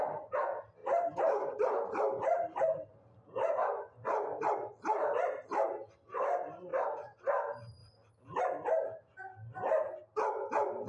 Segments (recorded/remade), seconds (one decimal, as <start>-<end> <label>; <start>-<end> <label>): 0.0-0.8 recorded; 0.8-2.9 remade; 2.9-6.7 recorded; 6.7-7.2 remade; 7.2-10.9 recorded